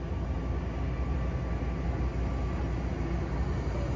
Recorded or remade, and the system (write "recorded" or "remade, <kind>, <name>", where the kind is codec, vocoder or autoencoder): recorded